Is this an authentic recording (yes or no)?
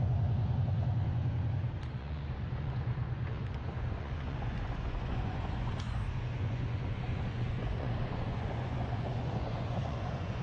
no